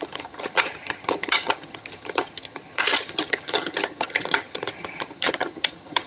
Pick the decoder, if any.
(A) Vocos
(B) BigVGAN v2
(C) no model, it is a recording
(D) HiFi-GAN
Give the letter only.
D